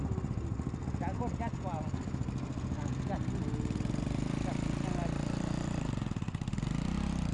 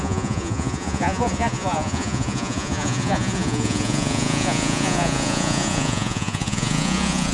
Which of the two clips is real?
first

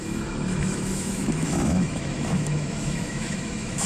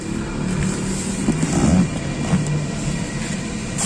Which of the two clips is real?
second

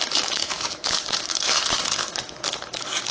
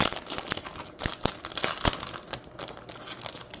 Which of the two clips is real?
second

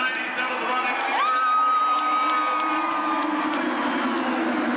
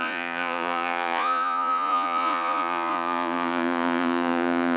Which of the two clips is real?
first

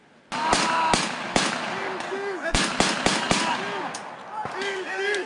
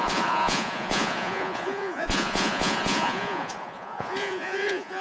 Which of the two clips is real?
first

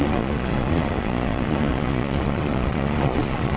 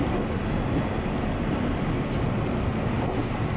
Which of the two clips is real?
second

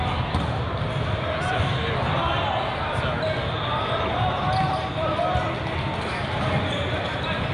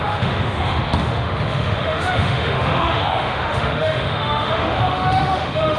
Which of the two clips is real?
first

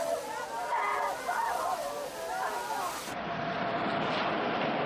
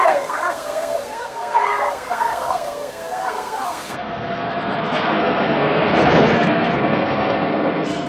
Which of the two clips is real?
first